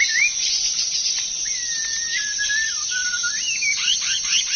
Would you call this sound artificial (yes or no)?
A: yes